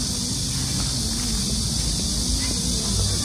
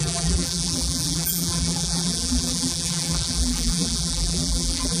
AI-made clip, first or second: second